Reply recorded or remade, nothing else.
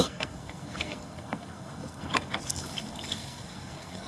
remade